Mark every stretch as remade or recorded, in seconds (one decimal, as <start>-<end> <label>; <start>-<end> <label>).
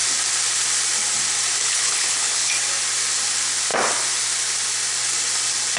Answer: 0.0-1.6 recorded; 1.6-2.5 remade; 2.5-5.8 recorded